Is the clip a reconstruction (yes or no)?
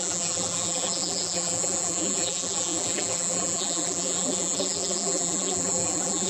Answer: yes